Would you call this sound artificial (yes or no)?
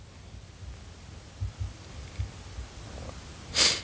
no